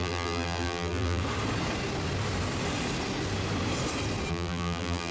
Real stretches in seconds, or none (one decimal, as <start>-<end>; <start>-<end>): 1.2-4.3